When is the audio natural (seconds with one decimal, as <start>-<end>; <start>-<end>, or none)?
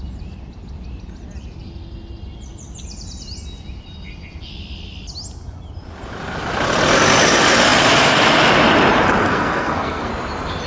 0.0-9.2; 10.1-10.7